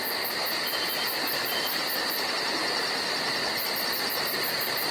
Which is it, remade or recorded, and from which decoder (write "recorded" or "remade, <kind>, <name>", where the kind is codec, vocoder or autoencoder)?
recorded